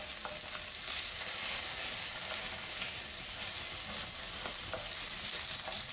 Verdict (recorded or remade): recorded